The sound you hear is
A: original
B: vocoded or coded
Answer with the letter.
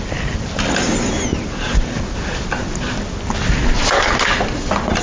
A